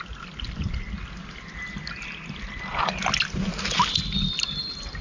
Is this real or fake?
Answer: real